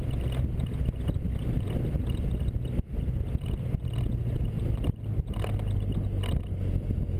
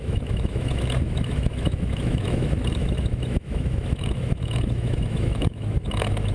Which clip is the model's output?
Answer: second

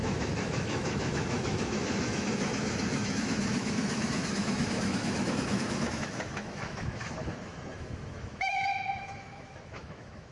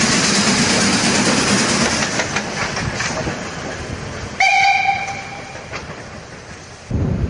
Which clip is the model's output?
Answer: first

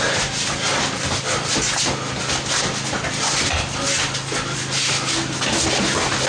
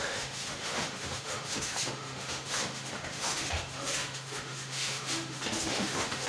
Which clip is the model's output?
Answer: second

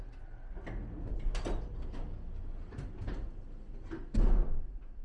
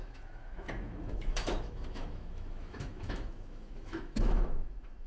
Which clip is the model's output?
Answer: second